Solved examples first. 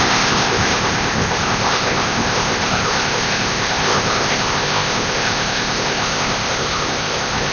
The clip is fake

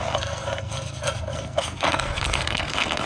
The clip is fake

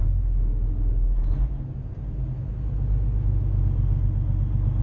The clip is real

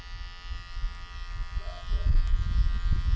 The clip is real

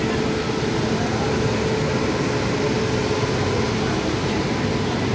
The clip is real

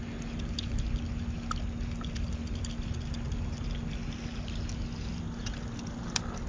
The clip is real